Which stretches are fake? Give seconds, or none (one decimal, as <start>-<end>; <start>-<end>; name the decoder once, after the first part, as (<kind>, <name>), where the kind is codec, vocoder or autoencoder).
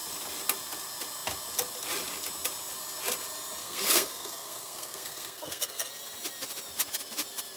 3.6-5.9 (codec, SNAC)